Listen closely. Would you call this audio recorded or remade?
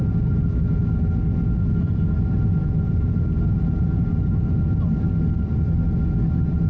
recorded